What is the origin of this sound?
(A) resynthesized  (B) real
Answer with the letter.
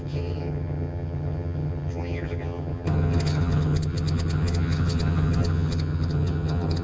A